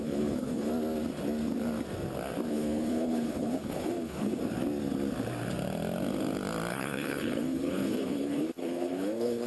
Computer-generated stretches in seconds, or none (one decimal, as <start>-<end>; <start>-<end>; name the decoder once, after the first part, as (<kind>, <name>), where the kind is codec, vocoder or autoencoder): 0.0-0.7 (codec, HILCodec); 2.5-4.4; 6.7-9.5

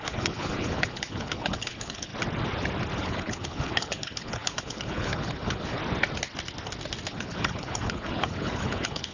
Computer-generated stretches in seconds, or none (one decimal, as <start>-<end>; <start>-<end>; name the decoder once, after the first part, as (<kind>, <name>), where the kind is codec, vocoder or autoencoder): 0.0-2.1 (codec, HILCodec); 3.0-5.8; 7.1-9.1

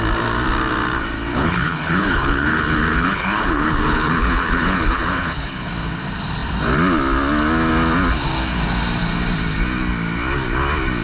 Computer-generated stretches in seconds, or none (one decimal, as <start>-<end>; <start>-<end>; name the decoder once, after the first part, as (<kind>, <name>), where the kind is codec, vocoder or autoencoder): 1.3-5.7 (codec, HILCodec)

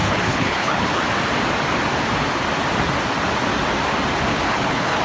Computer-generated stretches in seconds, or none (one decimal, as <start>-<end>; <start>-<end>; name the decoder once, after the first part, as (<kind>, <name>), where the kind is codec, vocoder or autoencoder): 0.0-1.0 (codec, HILCodec); 4.3-5.0

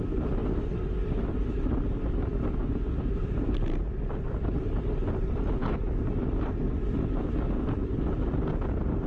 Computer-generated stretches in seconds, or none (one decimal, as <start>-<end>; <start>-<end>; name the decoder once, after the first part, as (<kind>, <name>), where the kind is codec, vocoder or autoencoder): none

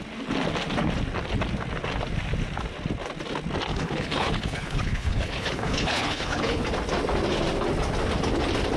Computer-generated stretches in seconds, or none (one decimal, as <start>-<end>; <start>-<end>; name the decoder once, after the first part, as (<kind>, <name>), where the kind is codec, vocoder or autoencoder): 3.7-6.6 (codec, HILCodec)

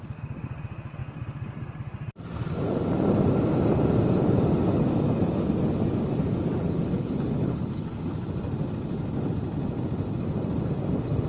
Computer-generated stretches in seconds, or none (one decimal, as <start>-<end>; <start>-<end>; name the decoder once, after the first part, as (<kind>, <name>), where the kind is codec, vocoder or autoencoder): 7.0-7.9 (codec, HILCodec)